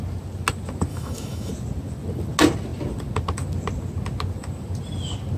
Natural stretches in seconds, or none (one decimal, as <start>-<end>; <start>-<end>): 0.0-0.9; 1.5-5.4